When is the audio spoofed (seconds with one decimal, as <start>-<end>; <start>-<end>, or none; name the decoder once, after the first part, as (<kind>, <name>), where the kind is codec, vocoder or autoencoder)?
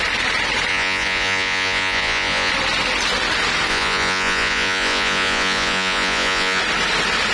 0.7-2.5 (vocoder, Vocos); 3.7-6.6